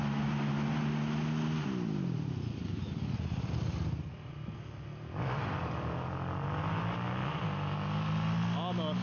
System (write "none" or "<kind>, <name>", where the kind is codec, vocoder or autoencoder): none